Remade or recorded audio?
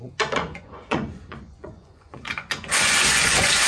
remade